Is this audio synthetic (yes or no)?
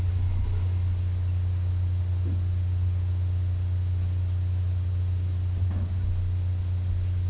no